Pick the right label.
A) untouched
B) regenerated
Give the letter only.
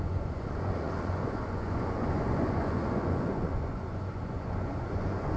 B